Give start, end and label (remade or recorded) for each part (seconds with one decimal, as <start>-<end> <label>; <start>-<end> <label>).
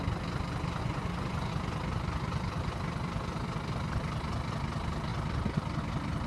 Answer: 0.0-0.8 recorded; 0.8-1.5 remade; 1.5-6.3 recorded